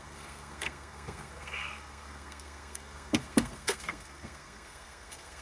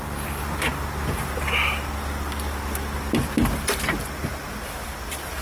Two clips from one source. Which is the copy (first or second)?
first